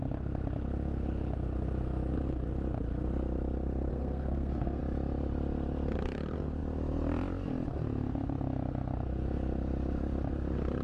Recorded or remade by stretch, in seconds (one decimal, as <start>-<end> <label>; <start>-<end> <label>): 0.0-3.9 recorded; 3.9-4.8 remade; 4.8-10.8 recorded